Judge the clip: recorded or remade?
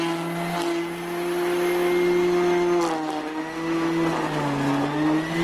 recorded